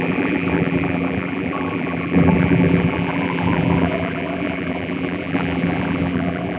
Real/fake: fake